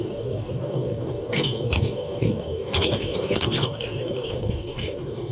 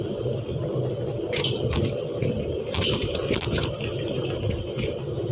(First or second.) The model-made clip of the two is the first